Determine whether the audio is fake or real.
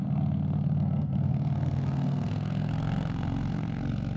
fake